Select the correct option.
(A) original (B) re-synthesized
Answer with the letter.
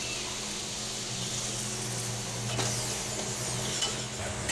A